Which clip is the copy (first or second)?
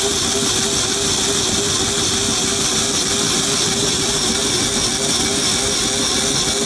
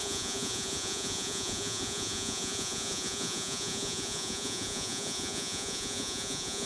second